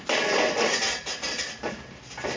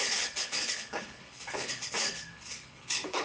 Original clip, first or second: first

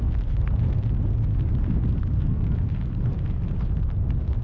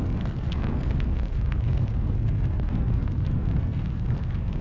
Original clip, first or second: first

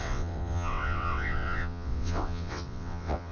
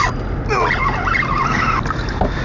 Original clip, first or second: second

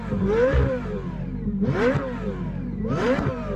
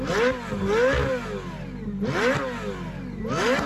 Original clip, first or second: second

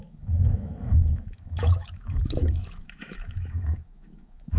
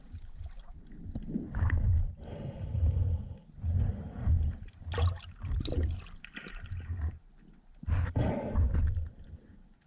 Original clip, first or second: second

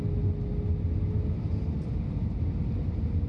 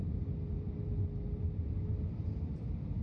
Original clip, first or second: first